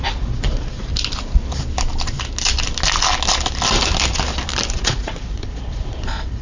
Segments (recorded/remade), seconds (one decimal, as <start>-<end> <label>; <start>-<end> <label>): 0.0-0.9 remade; 0.9-4.7 recorded; 4.7-6.4 remade